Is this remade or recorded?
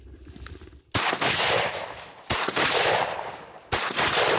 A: recorded